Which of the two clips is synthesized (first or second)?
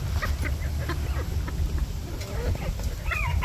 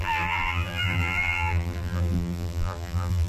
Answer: second